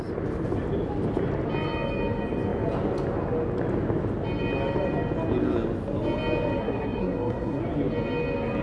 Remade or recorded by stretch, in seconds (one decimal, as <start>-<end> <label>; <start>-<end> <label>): 0.0-6.6 recorded; 6.6-7.6 remade; 7.6-8.6 recorded

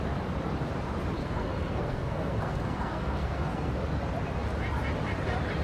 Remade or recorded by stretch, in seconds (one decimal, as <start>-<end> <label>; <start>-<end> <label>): 0.0-1.2 recorded; 1.2-3.7 remade; 3.7-5.6 recorded

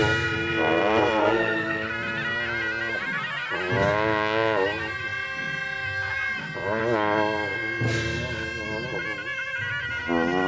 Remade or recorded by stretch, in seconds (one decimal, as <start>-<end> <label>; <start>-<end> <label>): 0.0-1.2 recorded; 1.2-1.9 remade; 1.9-10.5 recorded

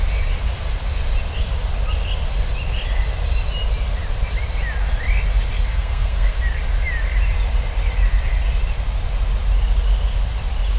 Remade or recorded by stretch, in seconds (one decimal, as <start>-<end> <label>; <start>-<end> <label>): 0.0-5.7 recorded; 5.7-6.4 remade; 6.4-10.8 recorded

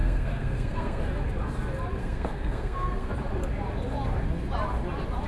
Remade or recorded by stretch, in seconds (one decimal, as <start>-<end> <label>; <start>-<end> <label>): 0.0-1.0 remade; 1.0-2.0 recorded; 2.0-3.1 remade; 3.1-5.3 recorded